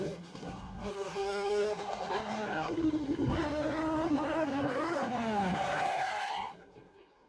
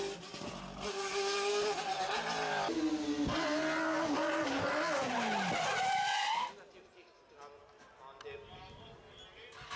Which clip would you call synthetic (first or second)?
first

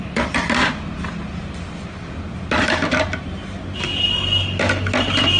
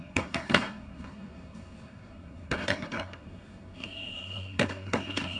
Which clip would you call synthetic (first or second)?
second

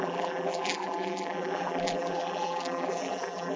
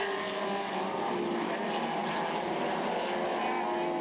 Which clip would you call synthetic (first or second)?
first